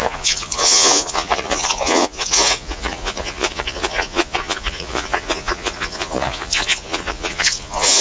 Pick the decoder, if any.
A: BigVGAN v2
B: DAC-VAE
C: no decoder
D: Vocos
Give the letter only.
D